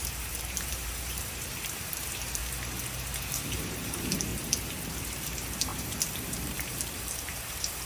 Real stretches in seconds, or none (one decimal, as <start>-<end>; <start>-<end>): 2.4-3.2; 4.3-4.9